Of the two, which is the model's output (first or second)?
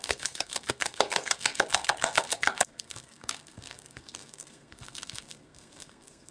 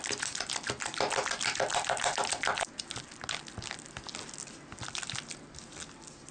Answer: first